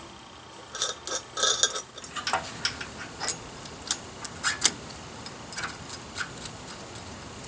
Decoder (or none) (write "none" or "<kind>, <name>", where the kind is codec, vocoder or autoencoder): none